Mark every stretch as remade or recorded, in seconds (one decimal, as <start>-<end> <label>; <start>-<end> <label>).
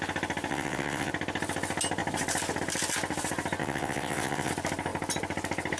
0.0-0.5 recorded; 0.5-1.1 remade; 1.1-3.6 recorded; 3.6-4.5 remade; 4.5-5.8 recorded